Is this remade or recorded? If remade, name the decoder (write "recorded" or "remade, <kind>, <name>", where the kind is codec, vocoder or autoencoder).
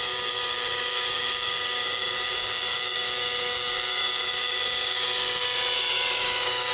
remade, codec, DAC